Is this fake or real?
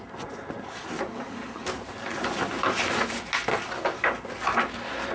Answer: real